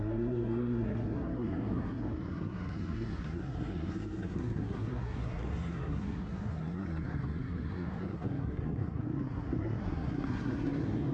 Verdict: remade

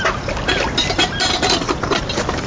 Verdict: recorded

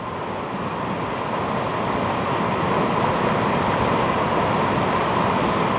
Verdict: recorded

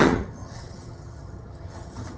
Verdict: remade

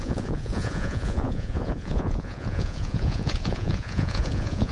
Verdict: remade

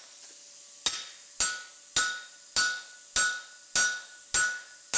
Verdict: recorded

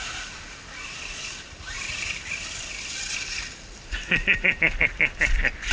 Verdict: recorded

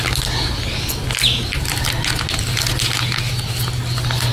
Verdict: recorded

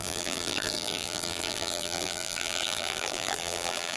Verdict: remade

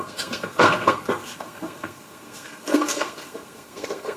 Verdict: remade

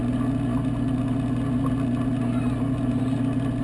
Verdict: recorded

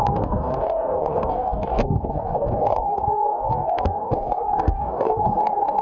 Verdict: remade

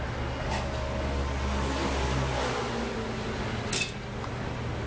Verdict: recorded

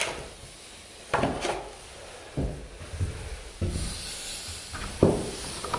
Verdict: recorded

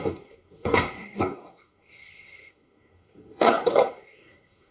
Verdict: remade